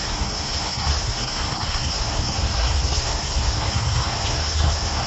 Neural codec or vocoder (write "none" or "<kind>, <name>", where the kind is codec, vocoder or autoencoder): codec, SNAC